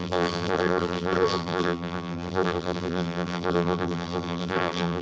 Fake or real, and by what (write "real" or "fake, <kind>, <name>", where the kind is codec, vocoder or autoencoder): fake, vocoder, BigVGAN v2